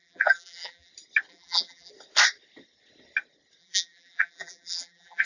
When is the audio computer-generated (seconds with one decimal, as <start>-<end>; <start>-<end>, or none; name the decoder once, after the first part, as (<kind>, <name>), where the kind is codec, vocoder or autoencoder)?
0.0-0.9 (vocoder, BigVGAN v2); 1.3-1.9; 3.6-5.3